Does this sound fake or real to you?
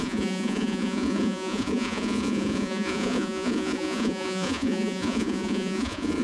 fake